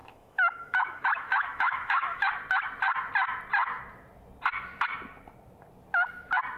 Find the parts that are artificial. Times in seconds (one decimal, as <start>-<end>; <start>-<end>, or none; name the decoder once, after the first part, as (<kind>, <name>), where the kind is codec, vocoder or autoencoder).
0.0-2.3 (autoencoder, DAC-VAE)